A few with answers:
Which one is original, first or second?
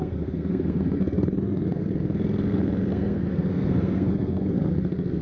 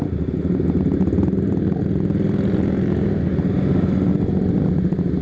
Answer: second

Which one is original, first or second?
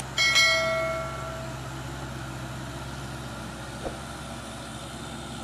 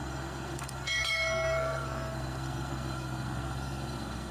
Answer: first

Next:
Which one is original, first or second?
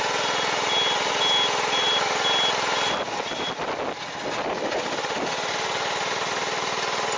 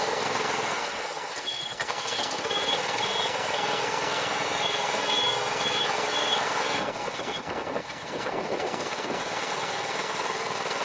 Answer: first